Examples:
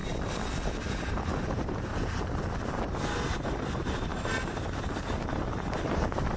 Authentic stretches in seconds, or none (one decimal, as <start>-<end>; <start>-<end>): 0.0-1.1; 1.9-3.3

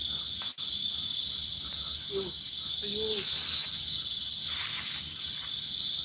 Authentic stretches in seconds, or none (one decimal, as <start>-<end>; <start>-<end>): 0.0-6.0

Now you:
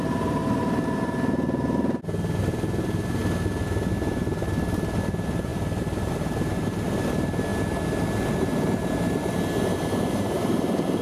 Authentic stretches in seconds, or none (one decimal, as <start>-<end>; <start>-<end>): 0.4-2.4; 3.2-4.1; 5.5-6.1; 7.5-8.3

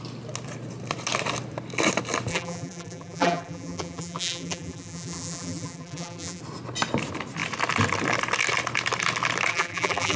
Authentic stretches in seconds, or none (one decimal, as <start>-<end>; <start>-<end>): 0.0-2.3; 6.4-9.5

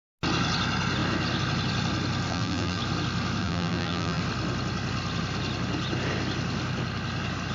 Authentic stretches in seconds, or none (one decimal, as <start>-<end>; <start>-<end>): 0.0-2.3; 2.8-3.4; 4.2-7.5

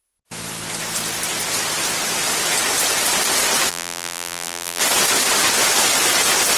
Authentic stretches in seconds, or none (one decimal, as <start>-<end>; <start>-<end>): 0.0-3.7; 4.8-6.6

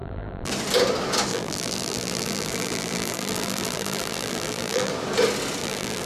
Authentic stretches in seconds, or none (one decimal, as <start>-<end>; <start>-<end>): 0.5-1.3; 4.9-5.6